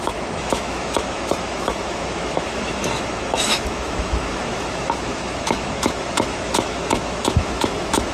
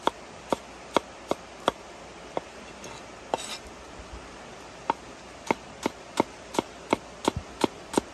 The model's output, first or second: first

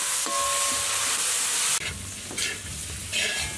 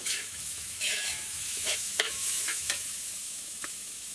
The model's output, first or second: second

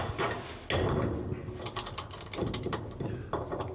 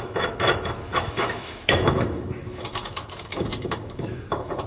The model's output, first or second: second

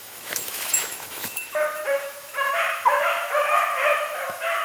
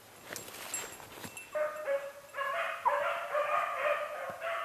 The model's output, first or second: first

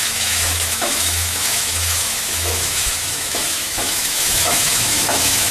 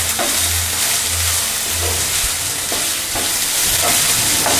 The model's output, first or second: first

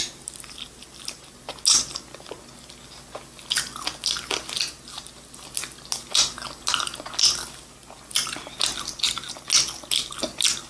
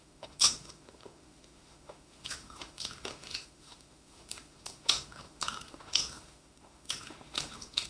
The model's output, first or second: second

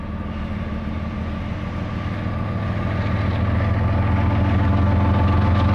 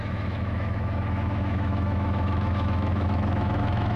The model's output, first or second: second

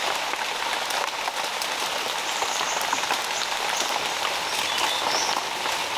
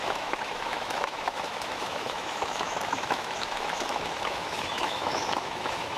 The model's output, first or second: second